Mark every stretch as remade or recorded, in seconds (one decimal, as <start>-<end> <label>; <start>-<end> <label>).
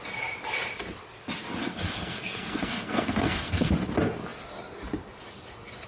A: 0.0-1.6 recorded; 1.6-3.7 remade; 3.7-5.9 recorded